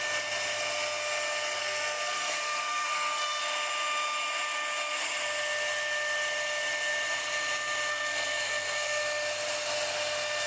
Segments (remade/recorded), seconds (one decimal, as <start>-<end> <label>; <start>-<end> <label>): 0.0-1.6 recorded; 1.6-3.4 remade; 3.4-7.9 recorded; 7.9-9.0 remade; 9.0-10.5 recorded